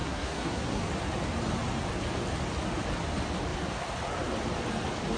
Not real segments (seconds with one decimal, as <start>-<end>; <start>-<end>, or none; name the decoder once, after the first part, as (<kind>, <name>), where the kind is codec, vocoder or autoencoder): 0.0-0.8 (codec, SNAC)